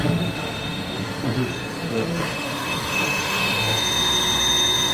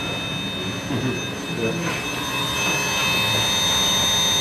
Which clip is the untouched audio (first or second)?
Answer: second